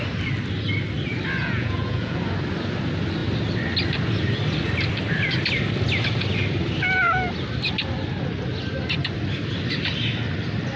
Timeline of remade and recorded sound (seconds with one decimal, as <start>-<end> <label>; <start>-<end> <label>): 0.0-1.4 recorded; 1.4-2.2 remade; 2.2-10.8 recorded

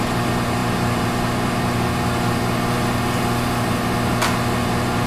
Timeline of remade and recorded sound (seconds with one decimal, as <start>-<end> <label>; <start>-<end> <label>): 0.0-5.1 recorded

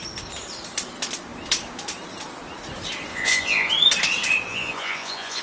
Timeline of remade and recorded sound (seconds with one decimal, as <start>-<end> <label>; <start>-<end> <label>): 0.0-3.1 recorded; 3.1-3.7 remade; 3.7-4.5 recorded; 4.5-5.4 remade

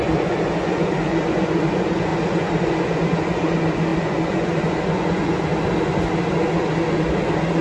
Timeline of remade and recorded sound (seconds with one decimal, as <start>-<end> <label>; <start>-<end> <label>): 0.0-5.5 remade; 5.5-6.5 recorded; 6.5-7.6 remade

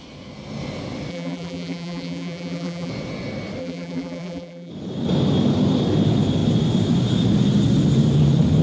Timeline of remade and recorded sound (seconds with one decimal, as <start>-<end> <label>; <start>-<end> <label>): 0.0-1.1 recorded; 1.1-2.9 remade; 2.9-3.6 recorded; 3.6-4.7 remade; 4.7-8.6 recorded

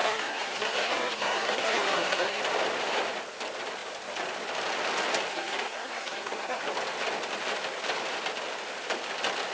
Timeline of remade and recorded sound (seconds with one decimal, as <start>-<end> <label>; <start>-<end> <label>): 0.0-2.4 remade; 2.4-5.3 recorded; 5.3-6.6 remade; 6.6-9.5 recorded

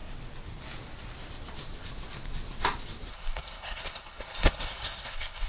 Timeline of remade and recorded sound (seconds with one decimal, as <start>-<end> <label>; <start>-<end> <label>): 0.0-3.1 recorded; 3.1-5.5 remade